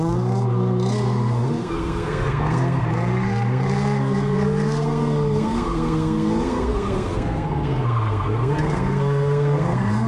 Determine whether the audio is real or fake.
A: fake